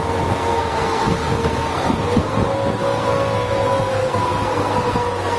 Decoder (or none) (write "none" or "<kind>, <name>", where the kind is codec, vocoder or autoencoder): codec, SNAC